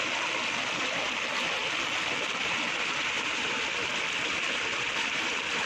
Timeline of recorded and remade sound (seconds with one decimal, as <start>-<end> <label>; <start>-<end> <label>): 0.0-5.7 recorded